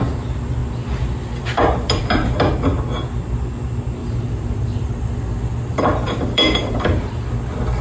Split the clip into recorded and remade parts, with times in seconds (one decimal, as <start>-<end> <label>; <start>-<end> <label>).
0.0-4.0 recorded; 4.0-5.0 remade; 5.0-5.7 recorded; 5.7-7.1 remade; 7.1-7.8 recorded